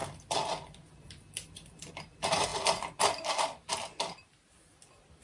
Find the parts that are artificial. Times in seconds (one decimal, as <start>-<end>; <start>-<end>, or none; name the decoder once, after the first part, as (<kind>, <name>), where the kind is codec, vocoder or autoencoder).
none